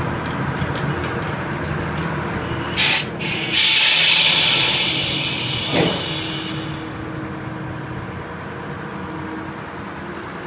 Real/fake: real